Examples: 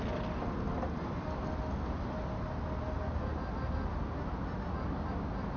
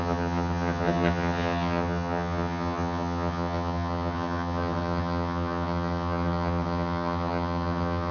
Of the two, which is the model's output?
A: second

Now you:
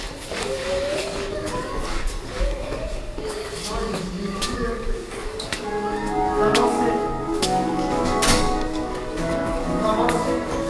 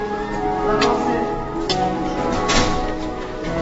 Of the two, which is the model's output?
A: first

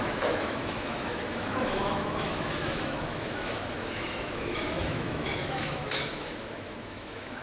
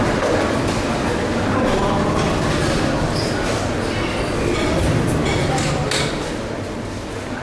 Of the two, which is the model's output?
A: first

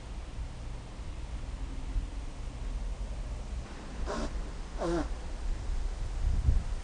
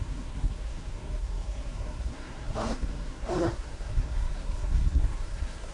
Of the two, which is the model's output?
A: second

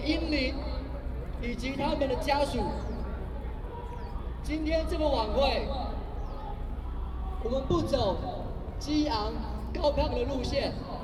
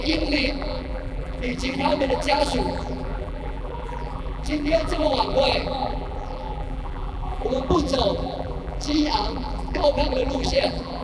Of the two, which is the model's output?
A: second